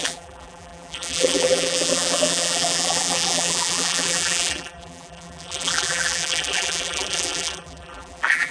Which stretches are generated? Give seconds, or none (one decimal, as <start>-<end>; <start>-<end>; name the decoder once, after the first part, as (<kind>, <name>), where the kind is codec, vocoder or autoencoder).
0.0-8.5 (vocoder, BigVGAN v2)